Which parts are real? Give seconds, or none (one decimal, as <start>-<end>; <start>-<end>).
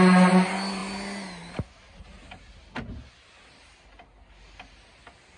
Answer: 0.0-5.4